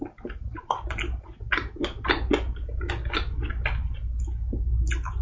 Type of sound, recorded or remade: recorded